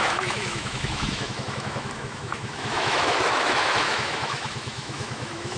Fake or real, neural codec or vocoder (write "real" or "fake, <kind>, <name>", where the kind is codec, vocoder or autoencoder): fake, autoencoder, DAC-VAE